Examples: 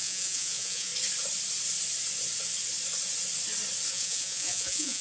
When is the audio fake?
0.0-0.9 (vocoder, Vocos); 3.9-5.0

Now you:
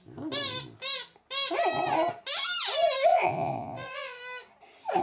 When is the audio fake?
3.1-4.2 (vocoder, Vocos)

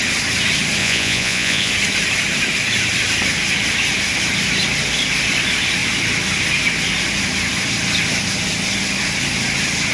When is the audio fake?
0.8-1.7 (vocoder, Vocos)

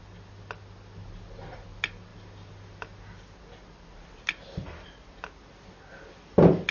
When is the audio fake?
none

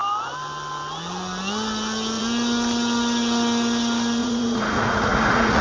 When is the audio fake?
4.2-5.6 (vocoder, Vocos)

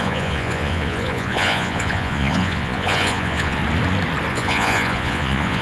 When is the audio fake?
0.0-3.6 (vocoder, Vocos); 4.3-5.6